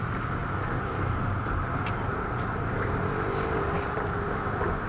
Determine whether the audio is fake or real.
real